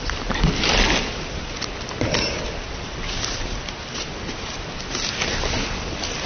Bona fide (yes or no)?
yes